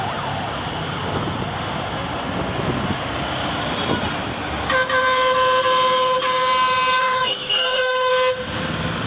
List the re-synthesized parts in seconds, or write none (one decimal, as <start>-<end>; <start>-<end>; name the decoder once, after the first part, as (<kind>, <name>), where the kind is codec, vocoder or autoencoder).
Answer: 7.0-8.1 (codec, DAC)